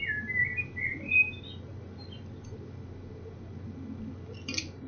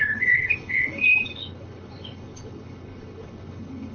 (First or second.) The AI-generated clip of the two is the second